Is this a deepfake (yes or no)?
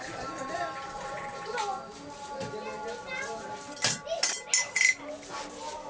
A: no